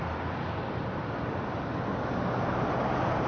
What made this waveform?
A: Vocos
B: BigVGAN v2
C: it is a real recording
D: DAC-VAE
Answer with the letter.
B